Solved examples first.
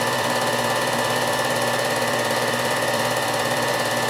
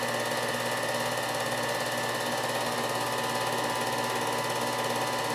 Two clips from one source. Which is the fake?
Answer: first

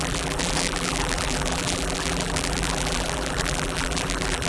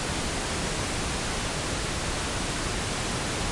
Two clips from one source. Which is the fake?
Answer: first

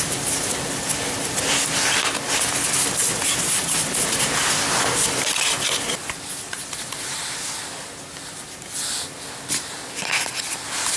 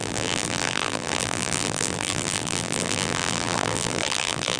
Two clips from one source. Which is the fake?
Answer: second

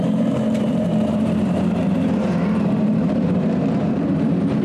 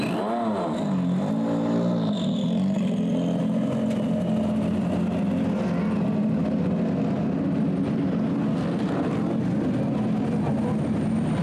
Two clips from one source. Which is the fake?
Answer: first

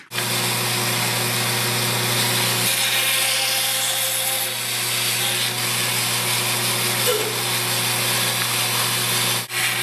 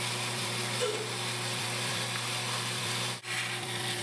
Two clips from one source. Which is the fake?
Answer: second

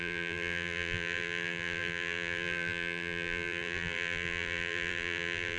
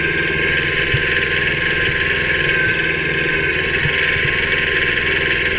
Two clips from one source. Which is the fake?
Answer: first